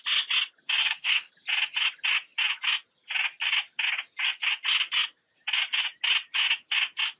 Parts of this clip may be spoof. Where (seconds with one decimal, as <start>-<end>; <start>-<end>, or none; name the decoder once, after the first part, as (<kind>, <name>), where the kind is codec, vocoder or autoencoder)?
0.8-1.3 (codec, SNAC)